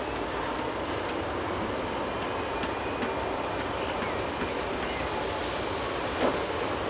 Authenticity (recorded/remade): recorded